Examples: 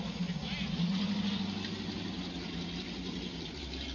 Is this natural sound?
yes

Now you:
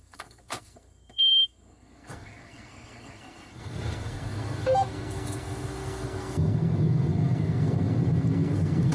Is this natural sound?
no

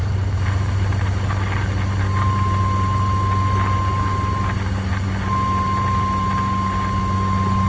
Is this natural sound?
yes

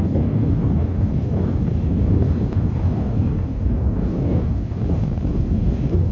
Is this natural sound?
no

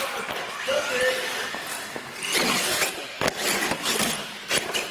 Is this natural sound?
yes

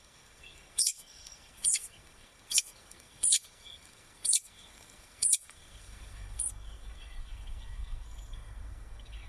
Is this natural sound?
no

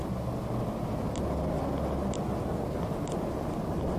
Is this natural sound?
yes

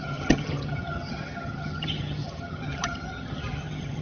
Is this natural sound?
no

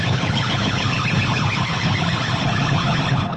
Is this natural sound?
no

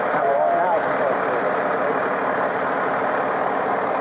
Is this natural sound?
yes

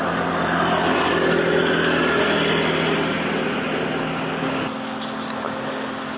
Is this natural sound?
yes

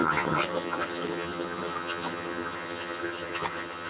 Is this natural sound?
no